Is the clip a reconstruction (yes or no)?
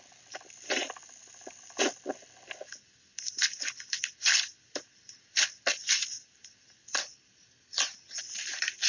yes